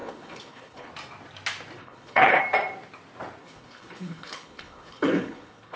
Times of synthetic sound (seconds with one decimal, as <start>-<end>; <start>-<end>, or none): 0.0-0.9; 1.8-2.4; 3.4-5.8